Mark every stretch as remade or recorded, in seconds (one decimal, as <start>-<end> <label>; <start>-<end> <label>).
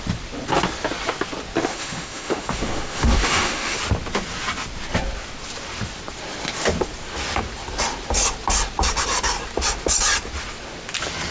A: 0.0-1.7 recorded; 1.7-3.8 remade; 3.8-11.3 recorded